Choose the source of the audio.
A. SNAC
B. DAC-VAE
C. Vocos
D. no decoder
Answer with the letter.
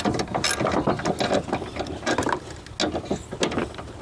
D